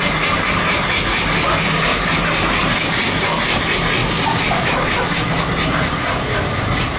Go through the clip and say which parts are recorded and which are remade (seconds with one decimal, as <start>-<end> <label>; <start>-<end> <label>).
0.0-7.0 recorded